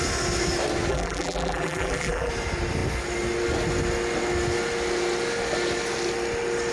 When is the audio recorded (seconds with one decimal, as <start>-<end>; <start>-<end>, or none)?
0.0-0.9; 2.3-6.7